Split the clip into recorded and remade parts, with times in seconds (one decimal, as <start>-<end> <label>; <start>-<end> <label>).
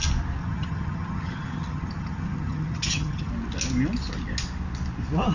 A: 0.0-0.4 recorded; 0.4-3.3 remade; 3.3-5.3 recorded